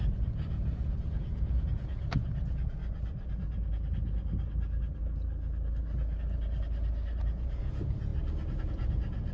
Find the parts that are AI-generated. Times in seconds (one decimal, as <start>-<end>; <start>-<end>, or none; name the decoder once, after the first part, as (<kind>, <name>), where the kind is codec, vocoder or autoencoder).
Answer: 0.0-2.8 (vocoder, Vocos); 7.2-8.1; 8.6-9.3

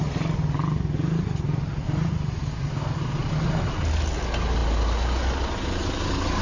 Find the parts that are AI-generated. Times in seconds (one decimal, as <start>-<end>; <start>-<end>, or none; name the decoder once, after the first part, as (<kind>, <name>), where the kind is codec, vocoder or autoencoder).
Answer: none

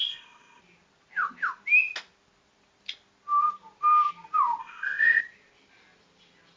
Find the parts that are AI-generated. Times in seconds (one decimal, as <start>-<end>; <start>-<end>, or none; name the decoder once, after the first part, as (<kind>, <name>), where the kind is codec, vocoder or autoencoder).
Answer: 0.0-0.6 (codec, ZipCodec); 4.6-5.2

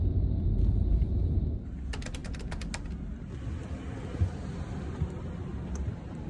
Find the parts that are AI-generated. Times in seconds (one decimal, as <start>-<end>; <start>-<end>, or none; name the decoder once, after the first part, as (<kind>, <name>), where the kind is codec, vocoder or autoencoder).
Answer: none